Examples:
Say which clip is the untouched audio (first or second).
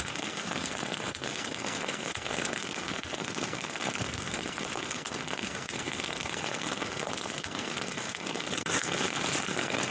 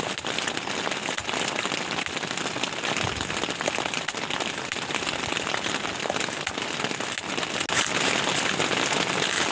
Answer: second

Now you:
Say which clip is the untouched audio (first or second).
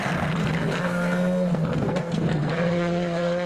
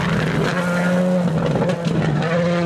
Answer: second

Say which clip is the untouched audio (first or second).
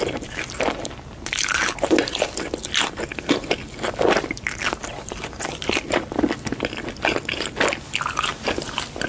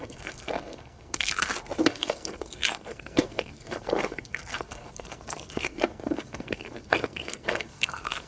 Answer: first